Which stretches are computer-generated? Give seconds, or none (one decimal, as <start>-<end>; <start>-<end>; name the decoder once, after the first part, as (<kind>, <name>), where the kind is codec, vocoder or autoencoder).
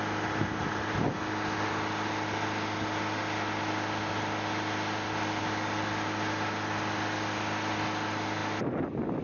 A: none